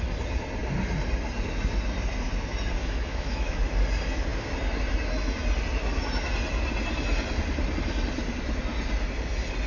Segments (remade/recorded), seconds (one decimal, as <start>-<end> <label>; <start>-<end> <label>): 0.0-2.8 recorded; 2.8-3.6 remade; 3.6-9.7 recorded